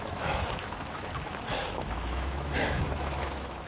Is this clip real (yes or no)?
no